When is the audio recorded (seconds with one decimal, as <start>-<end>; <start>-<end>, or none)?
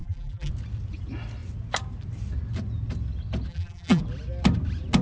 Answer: 0.5-3.5; 4.0-5.0